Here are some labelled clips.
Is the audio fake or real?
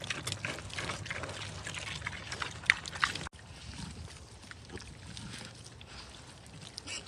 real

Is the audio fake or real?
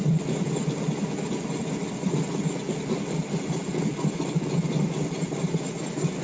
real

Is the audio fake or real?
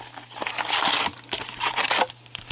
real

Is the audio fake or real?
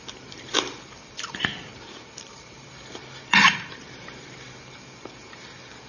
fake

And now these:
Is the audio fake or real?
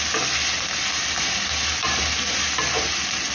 real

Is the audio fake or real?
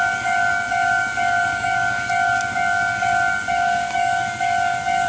fake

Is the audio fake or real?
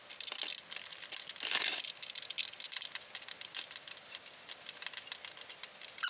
real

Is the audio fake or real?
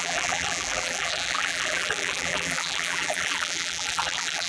fake